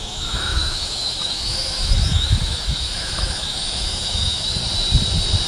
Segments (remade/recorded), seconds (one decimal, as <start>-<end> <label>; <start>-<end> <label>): 0.0-4.6 remade; 4.6-5.5 recorded